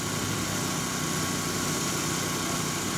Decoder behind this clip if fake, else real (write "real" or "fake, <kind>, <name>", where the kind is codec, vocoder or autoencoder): real